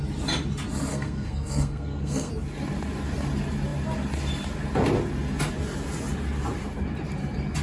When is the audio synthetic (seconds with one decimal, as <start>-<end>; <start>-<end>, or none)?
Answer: 0.9-2.3